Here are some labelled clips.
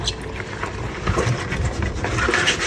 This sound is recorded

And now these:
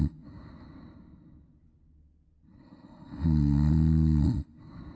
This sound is recorded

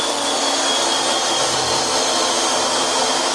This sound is remade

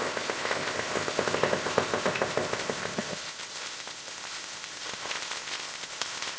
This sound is remade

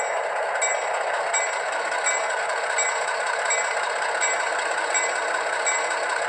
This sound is recorded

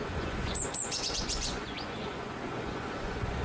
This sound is remade